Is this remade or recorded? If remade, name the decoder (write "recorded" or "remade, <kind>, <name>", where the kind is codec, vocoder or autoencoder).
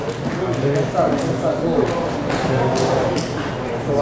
recorded